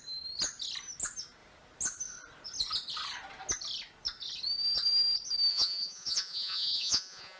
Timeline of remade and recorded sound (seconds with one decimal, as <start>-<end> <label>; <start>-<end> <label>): 0.0-5.5 recorded; 5.5-7.4 remade